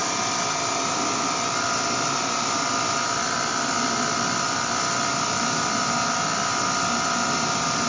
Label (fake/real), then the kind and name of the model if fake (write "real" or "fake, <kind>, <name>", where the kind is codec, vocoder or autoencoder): real